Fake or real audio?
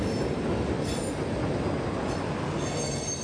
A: real